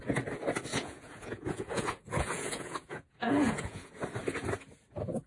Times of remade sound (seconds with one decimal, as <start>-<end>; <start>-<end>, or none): 0.7-3.9